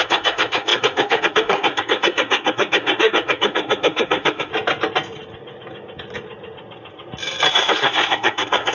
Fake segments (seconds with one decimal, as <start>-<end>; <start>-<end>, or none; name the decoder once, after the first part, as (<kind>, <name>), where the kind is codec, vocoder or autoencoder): 0.0-4.5 (codec, SNAC); 7.5-8.7